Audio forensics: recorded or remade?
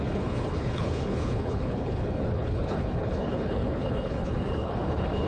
remade